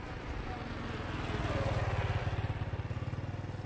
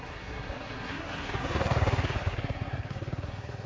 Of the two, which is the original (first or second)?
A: first